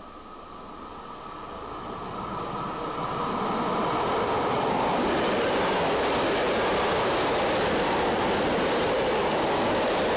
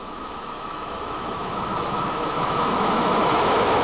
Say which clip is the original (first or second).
first